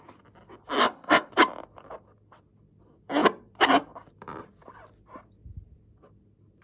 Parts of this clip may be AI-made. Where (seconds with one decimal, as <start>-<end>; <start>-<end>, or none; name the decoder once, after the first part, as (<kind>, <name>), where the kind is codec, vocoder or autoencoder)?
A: 0.8-1.3 (codec, ZipCodec)